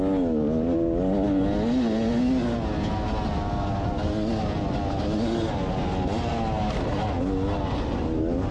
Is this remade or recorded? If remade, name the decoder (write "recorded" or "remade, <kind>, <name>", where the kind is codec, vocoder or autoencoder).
recorded